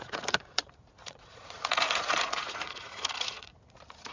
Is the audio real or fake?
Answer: fake